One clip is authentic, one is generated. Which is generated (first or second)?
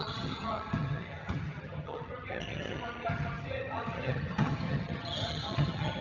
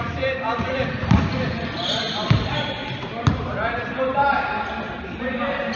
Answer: first